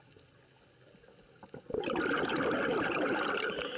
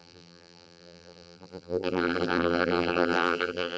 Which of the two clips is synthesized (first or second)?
second